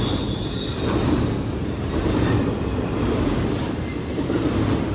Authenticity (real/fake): real